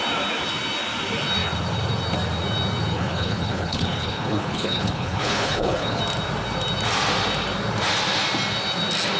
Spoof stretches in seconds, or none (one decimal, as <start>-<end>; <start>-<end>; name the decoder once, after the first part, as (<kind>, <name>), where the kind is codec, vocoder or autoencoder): 2.9-6.0 (codec, HILCodec)